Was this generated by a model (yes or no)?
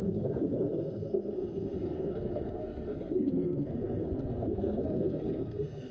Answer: yes